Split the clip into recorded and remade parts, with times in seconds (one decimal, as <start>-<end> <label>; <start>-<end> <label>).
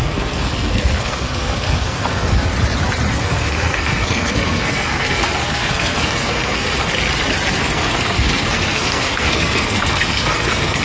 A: 0.0-2.5 remade; 2.5-3.2 recorded; 3.2-6.9 remade; 6.9-7.6 recorded; 7.6-10.8 remade